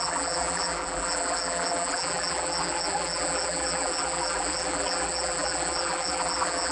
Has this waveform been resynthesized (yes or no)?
yes